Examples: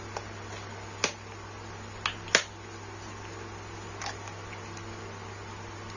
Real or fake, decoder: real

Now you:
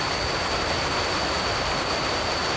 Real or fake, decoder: real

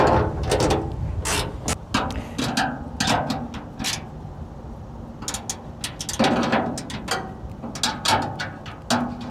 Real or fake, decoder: real